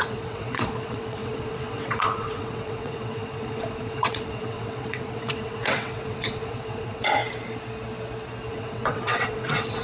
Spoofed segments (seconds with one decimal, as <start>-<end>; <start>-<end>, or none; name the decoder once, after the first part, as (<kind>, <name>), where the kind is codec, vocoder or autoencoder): 0.0-7.2 (vocoder, WaveNeXt); 8.5-9.8